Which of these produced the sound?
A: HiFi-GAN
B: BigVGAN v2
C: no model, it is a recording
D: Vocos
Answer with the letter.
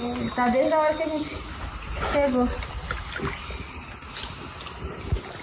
C